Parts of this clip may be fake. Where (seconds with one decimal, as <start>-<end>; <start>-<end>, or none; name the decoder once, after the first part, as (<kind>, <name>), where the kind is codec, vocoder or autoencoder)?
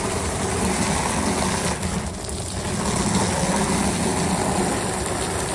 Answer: none